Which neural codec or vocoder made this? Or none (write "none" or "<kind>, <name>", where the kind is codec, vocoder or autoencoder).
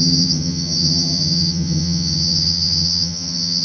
vocoder, HiFi-GAN